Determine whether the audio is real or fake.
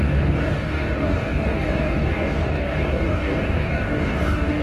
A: fake